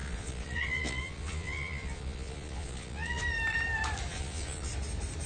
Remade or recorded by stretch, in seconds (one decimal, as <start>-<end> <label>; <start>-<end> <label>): 0.0-3.2 remade; 3.2-4.1 recorded; 4.1-4.7 remade; 4.7-5.3 recorded